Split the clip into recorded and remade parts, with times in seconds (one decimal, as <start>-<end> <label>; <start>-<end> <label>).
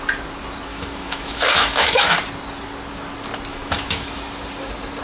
0.0-0.7 recorded; 0.7-2.2 remade; 2.2-3.5 recorded; 3.5-4.1 remade; 4.1-5.0 recorded